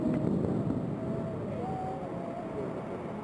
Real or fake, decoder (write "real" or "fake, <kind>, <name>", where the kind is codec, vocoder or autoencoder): real